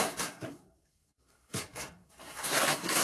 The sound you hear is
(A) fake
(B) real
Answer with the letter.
A